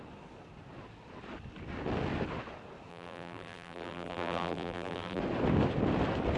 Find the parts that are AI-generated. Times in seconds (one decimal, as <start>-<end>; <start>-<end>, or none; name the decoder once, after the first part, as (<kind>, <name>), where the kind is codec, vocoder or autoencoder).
2.9-5.2 (vocoder, BigVGAN v2)